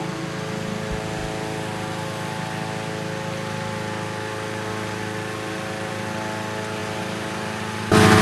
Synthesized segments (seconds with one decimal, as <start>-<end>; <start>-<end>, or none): none

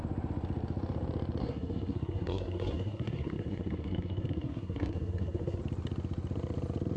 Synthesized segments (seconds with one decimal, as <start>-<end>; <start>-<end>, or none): 1.4-5.6

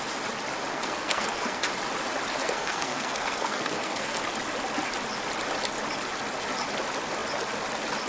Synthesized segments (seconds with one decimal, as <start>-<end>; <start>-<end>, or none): 0.7-1.7; 2.4-4.2

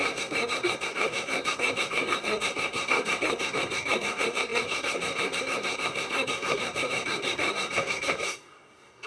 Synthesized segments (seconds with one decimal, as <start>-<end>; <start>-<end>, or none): 0.0-9.1

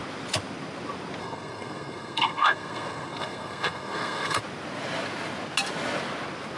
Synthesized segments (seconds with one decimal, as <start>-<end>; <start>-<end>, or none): 1.2-4.4